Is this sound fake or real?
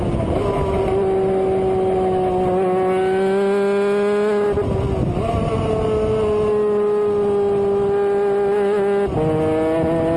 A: real